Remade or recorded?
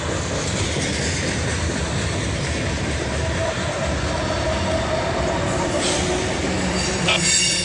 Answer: recorded